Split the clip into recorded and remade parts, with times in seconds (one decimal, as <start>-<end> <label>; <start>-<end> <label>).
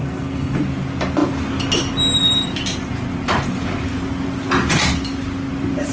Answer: 0.0-0.6 remade; 0.6-5.9 recorded